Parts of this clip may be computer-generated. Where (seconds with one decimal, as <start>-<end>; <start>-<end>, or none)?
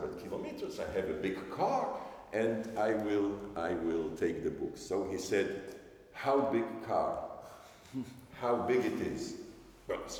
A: 2.6-4.3